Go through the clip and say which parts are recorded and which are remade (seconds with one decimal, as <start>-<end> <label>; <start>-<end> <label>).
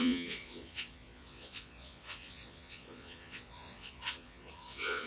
0.0-5.1 remade